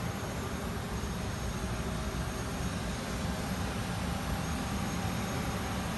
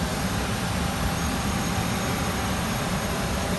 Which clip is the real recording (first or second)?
first